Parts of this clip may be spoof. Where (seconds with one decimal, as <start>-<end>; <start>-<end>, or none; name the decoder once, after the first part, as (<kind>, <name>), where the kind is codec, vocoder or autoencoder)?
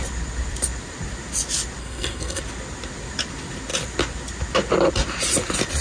1.8-2.4 (codec, SNAC)